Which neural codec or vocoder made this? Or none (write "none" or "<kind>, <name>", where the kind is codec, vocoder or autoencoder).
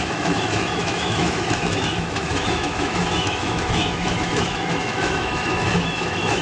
autoencoder, DAC-VAE